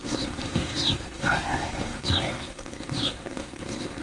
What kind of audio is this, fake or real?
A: fake